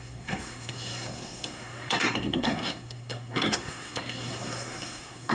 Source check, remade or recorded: remade